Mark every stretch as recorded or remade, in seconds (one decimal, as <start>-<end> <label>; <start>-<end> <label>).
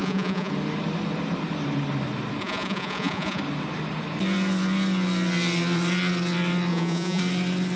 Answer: 0.0-0.5 remade; 0.5-2.4 recorded; 2.4-3.4 remade; 3.4-6.7 recorded; 6.7-7.2 remade; 7.2-7.8 recorded